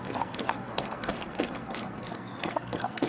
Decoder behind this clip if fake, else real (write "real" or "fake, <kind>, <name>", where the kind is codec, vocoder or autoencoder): fake, codec, SNAC